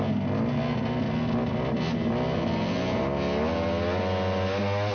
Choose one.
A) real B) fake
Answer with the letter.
A